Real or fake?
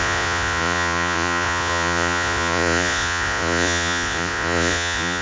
fake